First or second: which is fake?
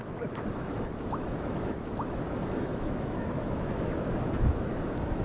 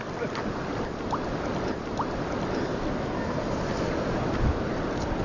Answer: first